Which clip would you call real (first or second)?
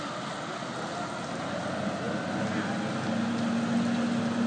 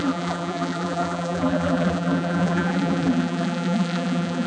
first